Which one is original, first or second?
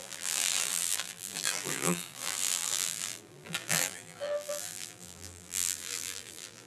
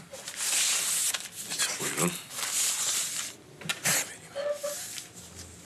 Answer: second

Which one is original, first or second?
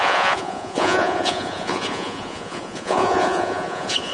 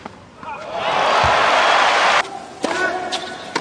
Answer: second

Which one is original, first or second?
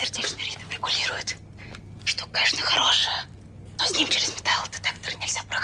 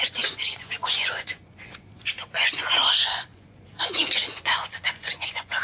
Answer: first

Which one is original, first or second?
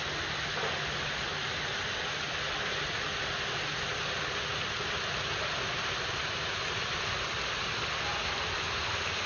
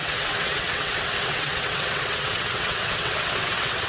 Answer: first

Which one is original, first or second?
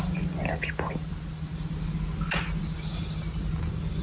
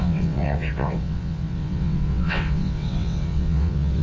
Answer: first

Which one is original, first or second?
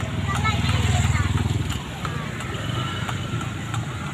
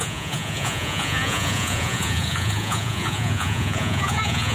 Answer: first